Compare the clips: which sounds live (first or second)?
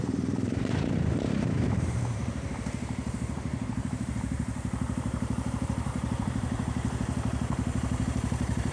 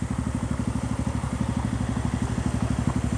second